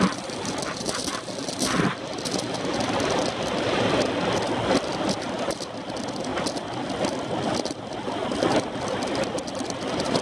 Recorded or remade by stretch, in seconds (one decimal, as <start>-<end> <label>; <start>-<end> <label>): 0.0-10.2 recorded